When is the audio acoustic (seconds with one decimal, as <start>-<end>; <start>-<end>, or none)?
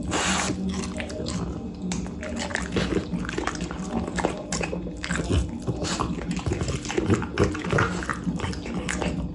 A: 0.0-9.3